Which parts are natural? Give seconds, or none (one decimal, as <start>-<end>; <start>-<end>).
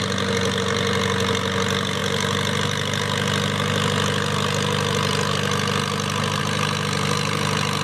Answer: 0.0-7.8